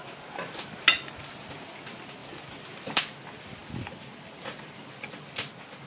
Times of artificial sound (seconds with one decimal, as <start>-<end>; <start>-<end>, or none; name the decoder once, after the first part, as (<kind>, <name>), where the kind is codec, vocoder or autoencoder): none